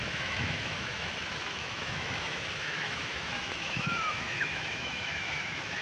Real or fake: fake